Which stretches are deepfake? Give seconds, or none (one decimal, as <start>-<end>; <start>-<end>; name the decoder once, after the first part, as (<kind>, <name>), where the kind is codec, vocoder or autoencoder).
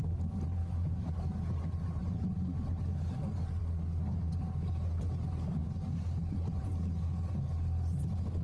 0.6-1.1 (autoencoder, DAC-VAE)